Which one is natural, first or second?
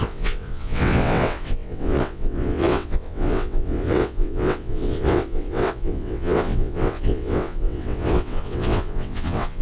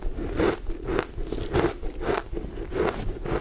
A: second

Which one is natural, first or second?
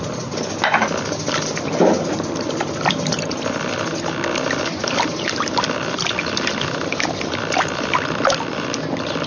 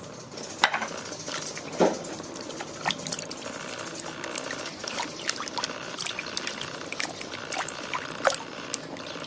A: first